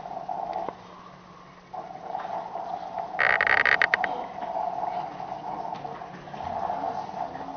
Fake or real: real